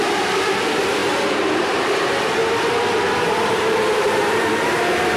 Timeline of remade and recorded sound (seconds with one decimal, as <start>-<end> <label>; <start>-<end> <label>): 0.0-2.4 remade; 2.4-3.2 recorded; 3.2-5.2 remade